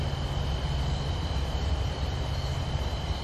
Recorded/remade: recorded